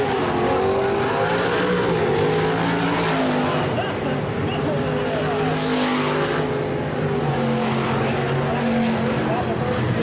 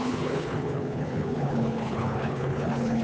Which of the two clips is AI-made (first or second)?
second